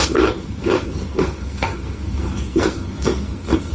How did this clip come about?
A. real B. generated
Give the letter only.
B